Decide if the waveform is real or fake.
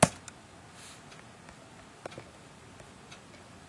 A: real